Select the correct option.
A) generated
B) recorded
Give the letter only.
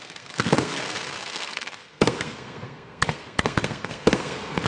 A